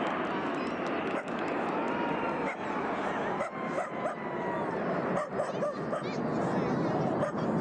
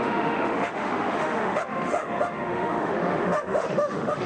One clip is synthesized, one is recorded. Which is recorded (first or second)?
first